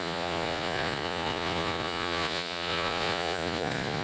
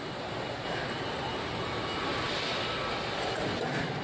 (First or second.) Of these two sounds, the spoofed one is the first